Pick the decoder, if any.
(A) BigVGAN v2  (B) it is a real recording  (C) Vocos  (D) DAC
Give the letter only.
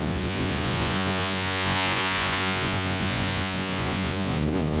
C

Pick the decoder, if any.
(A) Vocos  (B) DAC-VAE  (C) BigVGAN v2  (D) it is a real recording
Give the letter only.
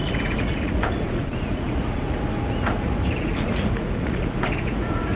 A